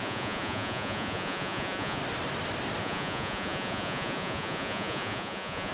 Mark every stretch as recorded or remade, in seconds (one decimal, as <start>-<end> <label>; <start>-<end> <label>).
0.0-2.0 remade; 2.0-2.8 recorded; 2.8-5.7 remade